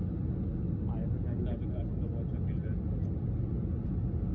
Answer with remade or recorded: recorded